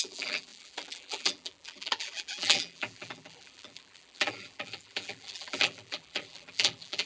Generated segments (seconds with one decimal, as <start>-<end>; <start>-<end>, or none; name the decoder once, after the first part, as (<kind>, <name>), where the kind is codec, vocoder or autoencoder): 0.0-7.1 (vocoder, BigVGAN v2)